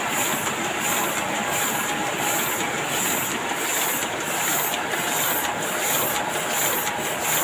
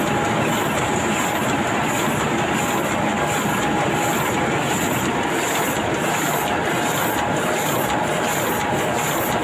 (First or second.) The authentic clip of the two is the second